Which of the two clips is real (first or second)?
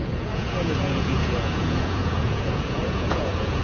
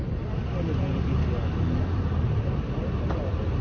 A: second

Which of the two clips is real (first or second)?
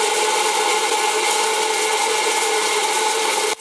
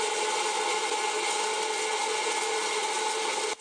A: second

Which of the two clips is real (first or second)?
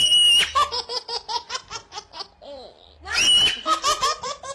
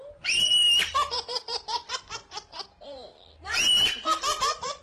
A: first